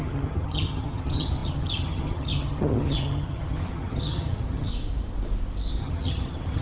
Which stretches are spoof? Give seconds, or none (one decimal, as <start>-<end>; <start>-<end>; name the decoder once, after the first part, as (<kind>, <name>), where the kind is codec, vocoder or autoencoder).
0.0-4.7 (vocoder, HiFi-GAN); 5.8-6.6